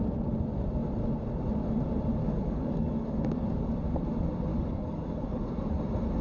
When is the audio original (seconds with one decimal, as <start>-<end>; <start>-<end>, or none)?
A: 0.0-2.2; 3.8-4.5; 5.8-6.2